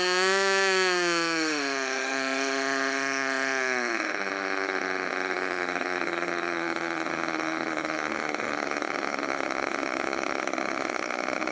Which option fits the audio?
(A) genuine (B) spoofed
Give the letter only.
B